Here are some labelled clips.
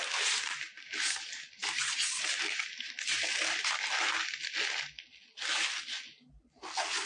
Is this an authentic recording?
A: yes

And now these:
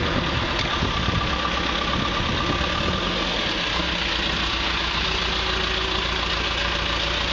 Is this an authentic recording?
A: yes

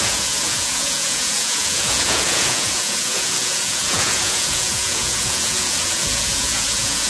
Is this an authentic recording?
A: no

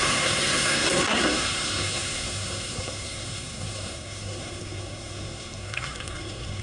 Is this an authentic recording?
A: no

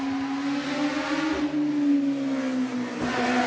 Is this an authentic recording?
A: yes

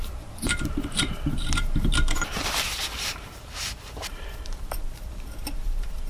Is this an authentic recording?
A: no